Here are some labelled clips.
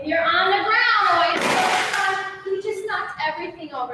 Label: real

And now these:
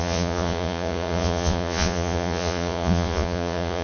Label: fake